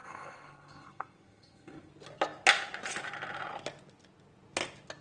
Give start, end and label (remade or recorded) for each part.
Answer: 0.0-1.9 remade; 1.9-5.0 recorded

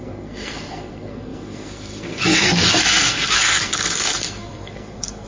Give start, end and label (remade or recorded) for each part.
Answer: 0.0-5.3 remade

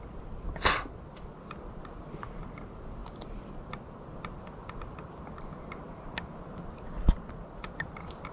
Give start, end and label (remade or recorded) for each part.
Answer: 0.0-8.3 recorded